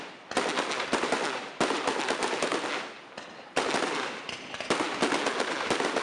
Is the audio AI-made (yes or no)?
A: no